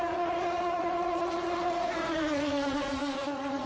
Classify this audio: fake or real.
fake